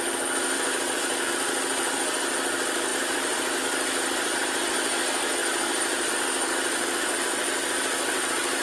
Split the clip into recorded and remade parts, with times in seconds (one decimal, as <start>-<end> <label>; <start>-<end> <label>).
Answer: 0.0-2.9 recorded; 2.9-3.6 remade; 3.6-5.4 recorded; 5.4-6.1 remade; 6.1-8.6 recorded